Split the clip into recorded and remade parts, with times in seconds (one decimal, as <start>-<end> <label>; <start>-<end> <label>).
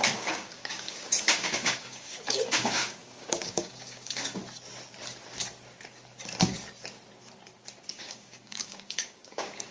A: 0.0-4.4 remade; 4.4-7.9 recorded; 7.9-9.7 remade